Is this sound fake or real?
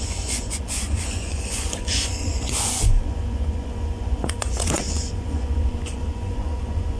fake